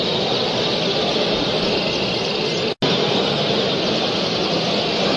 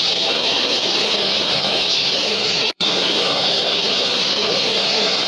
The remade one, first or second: second